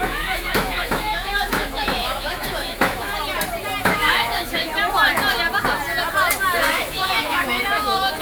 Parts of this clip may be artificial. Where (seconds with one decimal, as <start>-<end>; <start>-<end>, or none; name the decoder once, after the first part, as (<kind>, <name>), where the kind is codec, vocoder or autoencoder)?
0.0-3.1 (autoencoder, DAC-VAE); 3.8-4.7; 6.6-8.2